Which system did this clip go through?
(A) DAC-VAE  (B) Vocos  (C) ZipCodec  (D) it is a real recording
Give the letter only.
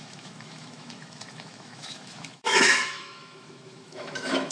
A